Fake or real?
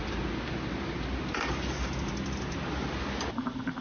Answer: real